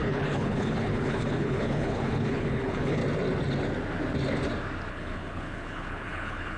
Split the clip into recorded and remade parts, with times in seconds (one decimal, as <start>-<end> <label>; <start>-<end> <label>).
0.0-3.0 remade; 3.0-4.9 recorded; 4.9-6.6 remade